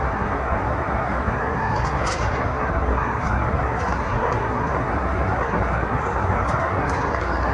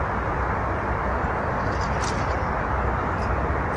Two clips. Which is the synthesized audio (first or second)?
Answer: first